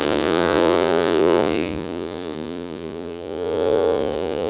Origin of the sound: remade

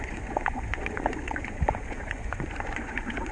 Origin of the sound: remade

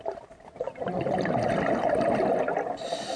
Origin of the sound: recorded